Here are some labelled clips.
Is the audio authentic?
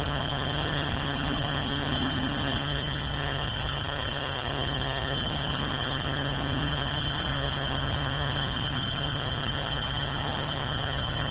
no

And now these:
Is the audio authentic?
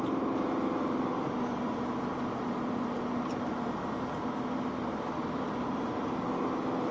yes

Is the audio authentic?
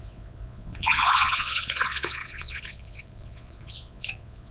no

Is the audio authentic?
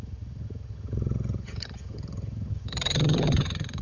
no